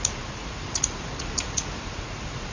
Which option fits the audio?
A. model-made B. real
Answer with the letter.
A